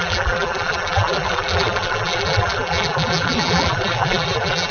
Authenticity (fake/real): fake